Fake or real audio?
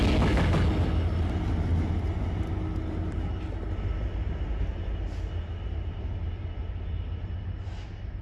real